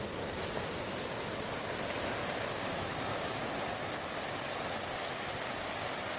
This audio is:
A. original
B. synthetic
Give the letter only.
A